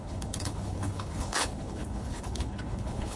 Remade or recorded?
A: remade